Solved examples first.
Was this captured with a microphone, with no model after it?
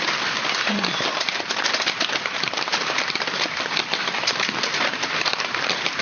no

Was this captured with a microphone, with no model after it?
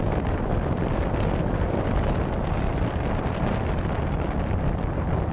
no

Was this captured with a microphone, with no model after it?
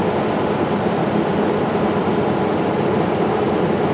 yes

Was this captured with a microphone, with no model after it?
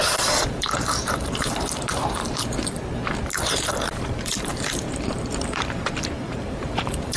no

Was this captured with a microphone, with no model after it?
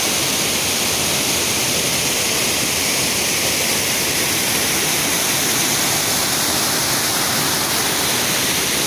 no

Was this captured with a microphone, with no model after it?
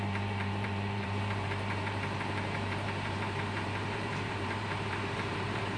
no